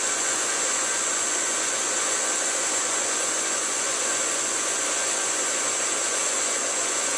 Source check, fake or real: fake